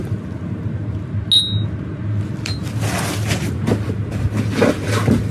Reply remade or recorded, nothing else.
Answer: recorded